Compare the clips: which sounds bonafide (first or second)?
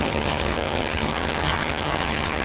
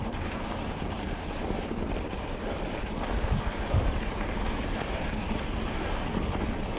second